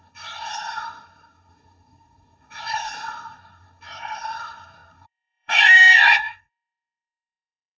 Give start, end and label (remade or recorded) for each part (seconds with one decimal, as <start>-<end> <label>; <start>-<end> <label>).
0.0-7.8 remade